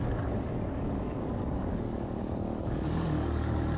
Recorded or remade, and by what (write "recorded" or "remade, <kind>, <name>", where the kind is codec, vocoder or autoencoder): remade, codec, DAC